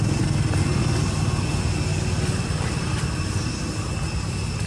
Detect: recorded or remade recorded